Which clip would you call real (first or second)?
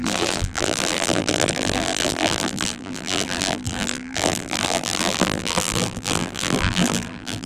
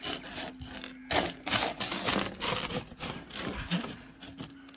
second